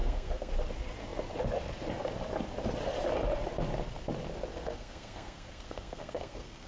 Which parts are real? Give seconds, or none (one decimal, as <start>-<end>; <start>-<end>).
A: 0.5-4.5